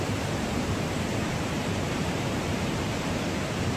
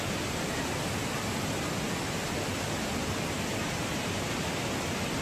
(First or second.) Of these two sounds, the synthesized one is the first